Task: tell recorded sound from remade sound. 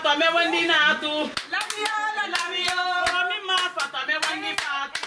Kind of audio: recorded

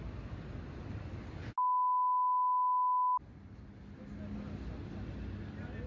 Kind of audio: recorded